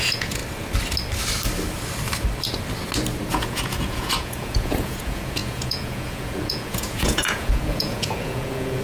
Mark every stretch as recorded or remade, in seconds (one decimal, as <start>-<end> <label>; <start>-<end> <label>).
0.0-0.4 remade; 0.4-3.3 recorded; 3.3-8.8 remade